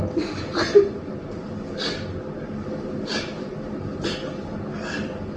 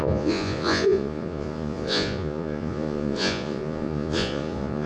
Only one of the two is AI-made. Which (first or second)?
second